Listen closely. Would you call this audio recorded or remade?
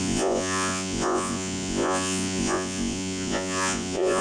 remade